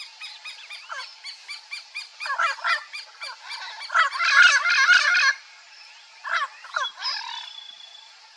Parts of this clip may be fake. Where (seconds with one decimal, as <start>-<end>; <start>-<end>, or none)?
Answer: none